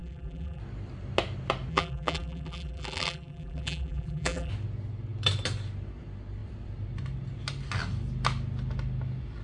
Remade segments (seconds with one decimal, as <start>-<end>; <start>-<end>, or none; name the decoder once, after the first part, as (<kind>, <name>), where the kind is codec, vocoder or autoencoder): 0.0-0.6 (vocoder, BigVGAN v2); 1.7-4.5